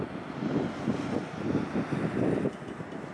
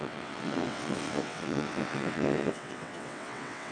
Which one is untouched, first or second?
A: first